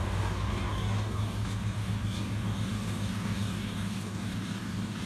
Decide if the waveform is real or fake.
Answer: fake